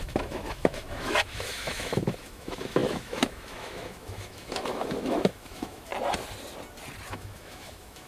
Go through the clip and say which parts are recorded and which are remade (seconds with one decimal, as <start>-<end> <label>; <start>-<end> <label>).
0.0-5.9 remade; 5.9-7.1 recorded; 7.1-8.1 remade